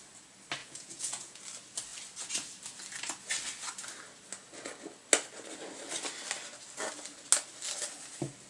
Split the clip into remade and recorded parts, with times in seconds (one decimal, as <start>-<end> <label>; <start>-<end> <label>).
0.0-0.6 recorded; 0.6-1.4 remade; 1.4-8.5 recorded